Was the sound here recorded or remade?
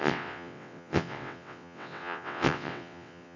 remade